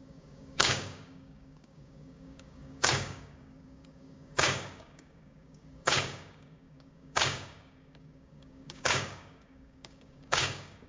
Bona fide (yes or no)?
no